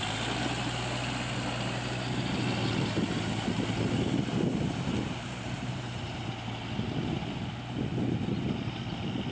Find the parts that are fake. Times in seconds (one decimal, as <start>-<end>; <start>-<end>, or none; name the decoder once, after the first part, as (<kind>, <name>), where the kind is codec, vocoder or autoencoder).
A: 4.5-6.2 (vocoder, BigVGAN v2)